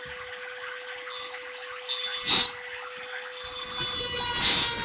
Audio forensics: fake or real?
real